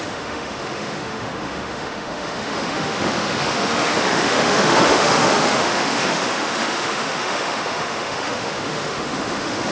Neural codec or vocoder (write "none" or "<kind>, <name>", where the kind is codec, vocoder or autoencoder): autoencoder, DAC-VAE